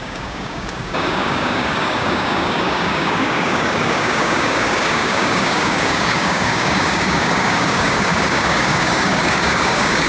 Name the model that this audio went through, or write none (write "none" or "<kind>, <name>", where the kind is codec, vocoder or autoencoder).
codec, DAC